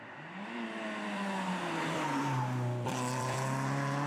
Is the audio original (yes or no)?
no